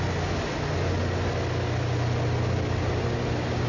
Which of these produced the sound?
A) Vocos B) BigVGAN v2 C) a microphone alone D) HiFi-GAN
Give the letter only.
C